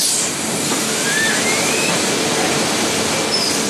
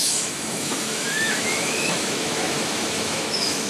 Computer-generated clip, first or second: second